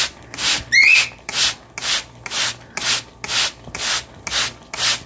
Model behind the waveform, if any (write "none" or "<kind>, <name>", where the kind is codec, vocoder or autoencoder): none